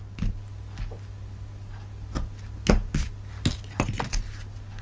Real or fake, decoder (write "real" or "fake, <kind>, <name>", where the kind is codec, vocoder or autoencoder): real